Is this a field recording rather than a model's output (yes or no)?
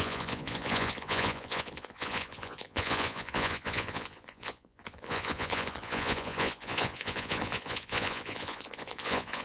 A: no